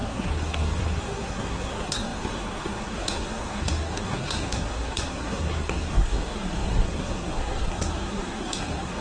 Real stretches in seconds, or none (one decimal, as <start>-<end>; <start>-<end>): none